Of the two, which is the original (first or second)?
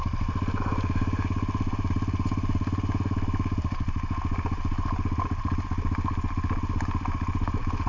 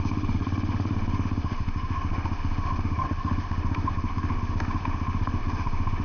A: first